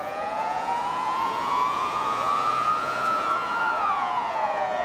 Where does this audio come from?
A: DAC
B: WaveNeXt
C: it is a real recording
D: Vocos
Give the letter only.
D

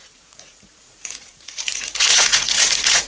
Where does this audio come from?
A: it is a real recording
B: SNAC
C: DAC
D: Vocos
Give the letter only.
D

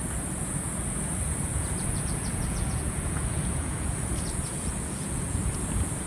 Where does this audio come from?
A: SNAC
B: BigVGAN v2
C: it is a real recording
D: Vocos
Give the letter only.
D